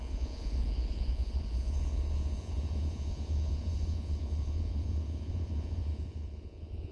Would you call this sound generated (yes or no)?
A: yes